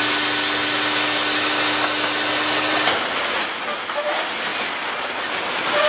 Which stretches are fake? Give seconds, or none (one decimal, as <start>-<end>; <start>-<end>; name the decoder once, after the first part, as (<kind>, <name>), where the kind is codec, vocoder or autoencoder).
none